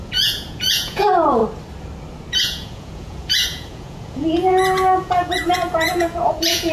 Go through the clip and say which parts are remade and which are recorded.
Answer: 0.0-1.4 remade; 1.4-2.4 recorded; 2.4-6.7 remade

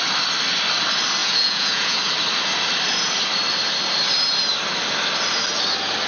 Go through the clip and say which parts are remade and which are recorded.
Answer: 0.0-1.2 recorded; 1.2-2.0 remade; 2.0-6.1 recorded

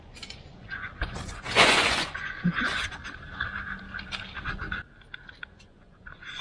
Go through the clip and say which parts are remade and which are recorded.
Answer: 0.0-3.0 remade; 3.0-5.5 recorded; 5.5-6.4 remade

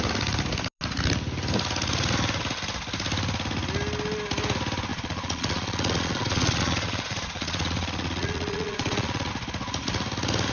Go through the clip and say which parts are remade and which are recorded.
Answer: 0.0-4.9 recorded; 4.9-9.3 remade; 9.3-10.5 recorded

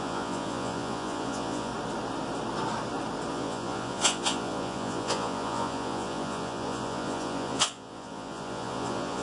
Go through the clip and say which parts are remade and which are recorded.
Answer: 0.0-1.7 remade; 1.7-3.3 recorded; 3.3-9.2 remade